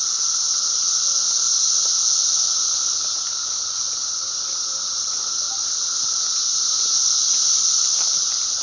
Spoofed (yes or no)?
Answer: no